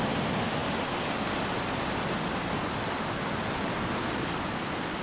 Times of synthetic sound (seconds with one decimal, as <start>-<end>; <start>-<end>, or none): none